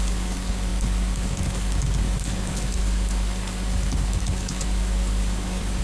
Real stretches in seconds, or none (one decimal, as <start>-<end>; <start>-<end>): none